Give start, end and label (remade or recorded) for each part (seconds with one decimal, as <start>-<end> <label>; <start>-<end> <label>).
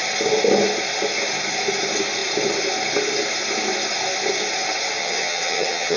0.0-5.0 recorded; 5.0-6.0 remade